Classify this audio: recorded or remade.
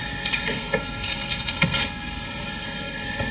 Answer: remade